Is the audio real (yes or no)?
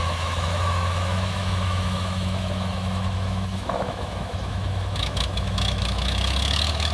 no